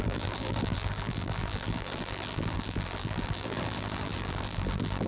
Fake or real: fake